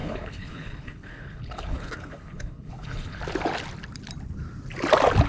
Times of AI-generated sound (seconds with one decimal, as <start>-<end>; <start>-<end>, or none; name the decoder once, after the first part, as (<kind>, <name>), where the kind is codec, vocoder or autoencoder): 0.0-3.2 (codec, HILCodec)